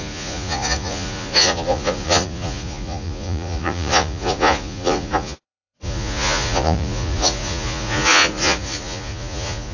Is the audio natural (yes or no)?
no